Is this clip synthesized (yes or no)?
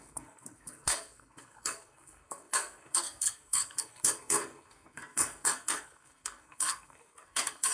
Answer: yes